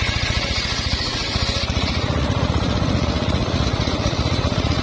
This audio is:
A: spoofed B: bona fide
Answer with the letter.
A